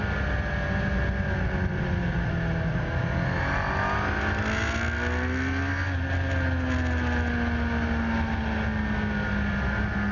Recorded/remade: recorded